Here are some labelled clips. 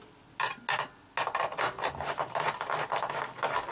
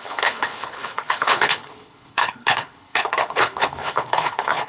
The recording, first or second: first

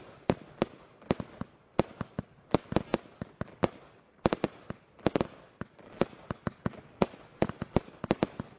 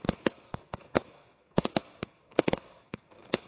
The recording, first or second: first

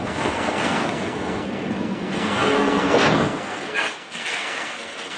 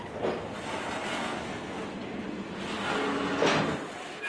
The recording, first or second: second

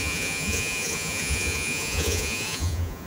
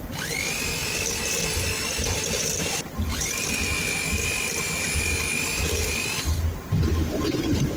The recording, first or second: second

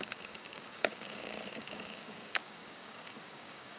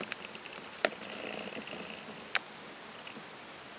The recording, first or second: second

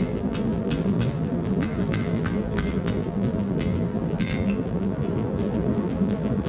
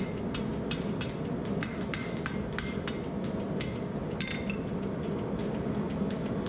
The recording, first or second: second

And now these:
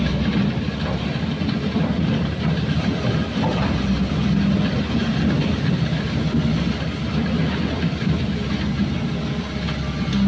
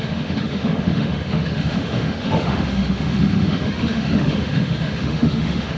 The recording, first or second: first